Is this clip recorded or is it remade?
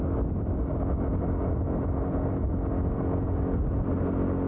recorded